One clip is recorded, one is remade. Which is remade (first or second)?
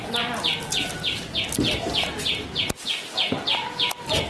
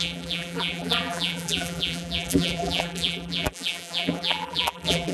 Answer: second